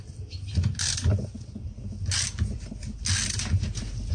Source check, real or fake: real